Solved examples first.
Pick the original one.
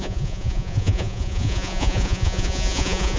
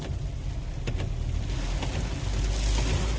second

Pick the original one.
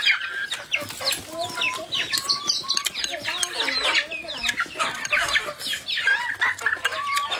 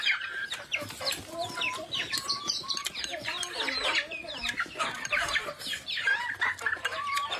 first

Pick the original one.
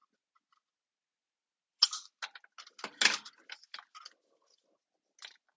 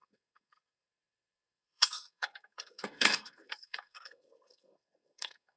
first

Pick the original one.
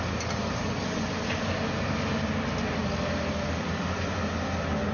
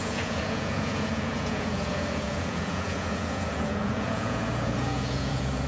first